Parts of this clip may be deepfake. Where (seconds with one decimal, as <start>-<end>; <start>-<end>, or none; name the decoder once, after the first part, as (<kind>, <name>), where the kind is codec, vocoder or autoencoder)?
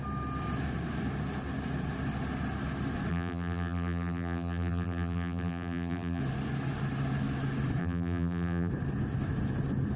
3.1-6.2 (vocoder, BigVGAN v2); 7.8-8.7